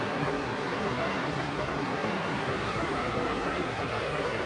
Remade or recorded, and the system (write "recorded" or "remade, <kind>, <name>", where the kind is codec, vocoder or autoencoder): remade, codec, SNAC